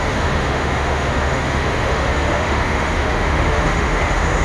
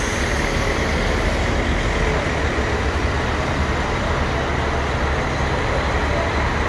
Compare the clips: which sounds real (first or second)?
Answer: second